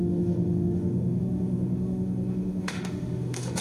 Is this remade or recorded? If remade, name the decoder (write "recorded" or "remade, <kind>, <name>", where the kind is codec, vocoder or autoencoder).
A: remade, autoencoder, DAC-VAE